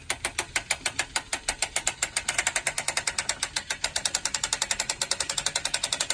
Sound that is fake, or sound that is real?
real